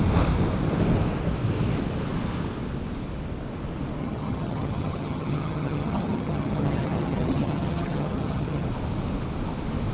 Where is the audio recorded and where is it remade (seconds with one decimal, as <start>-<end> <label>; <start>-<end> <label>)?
0.0-4.0 recorded; 4.0-8.7 remade; 8.7-9.9 recorded

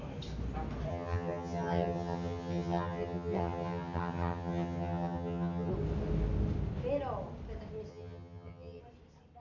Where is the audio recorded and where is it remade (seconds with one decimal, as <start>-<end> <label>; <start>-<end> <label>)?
0.0-0.9 recorded; 0.9-5.7 remade; 5.7-7.9 recorded; 7.9-8.8 remade; 8.8-9.4 recorded

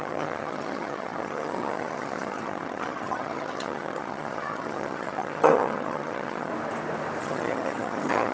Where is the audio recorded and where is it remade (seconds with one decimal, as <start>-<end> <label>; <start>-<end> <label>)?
0.0-6.5 remade; 6.5-7.2 recorded; 7.2-8.3 remade

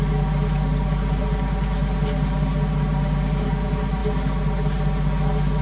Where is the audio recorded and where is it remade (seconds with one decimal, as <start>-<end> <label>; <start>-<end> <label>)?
0.0-5.6 recorded

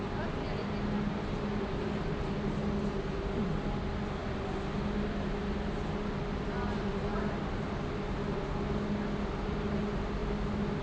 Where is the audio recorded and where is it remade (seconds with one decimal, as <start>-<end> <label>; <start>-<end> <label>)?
0.0-10.8 recorded

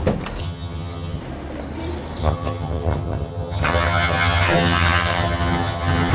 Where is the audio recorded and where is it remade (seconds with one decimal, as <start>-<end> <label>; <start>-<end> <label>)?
0.0-0.4 recorded; 0.4-1.2 remade; 1.2-2.2 recorded; 2.2-6.1 remade

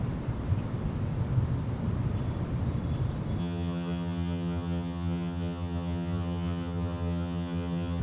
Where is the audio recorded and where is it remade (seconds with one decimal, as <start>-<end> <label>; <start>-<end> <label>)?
0.0-3.4 recorded; 3.4-8.0 remade